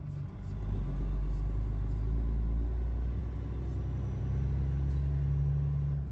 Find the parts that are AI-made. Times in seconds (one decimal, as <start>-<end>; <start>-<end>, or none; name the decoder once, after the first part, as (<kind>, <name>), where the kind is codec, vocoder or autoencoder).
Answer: none